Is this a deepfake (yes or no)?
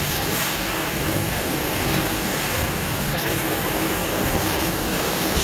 yes